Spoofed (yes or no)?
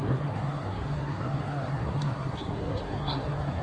yes